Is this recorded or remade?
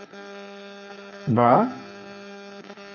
remade